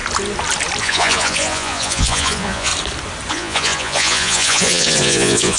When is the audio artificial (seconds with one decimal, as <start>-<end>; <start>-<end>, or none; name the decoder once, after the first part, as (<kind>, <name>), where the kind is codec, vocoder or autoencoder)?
0.8-2.7 (vocoder, Vocos); 3.3-5.6